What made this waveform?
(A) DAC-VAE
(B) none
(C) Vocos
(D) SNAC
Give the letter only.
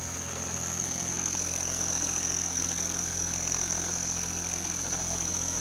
D